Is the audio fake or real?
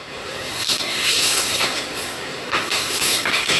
fake